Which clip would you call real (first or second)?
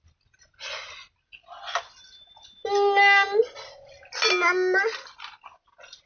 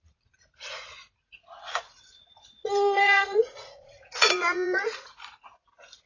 first